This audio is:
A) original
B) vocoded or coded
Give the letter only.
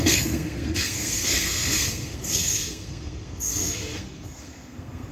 B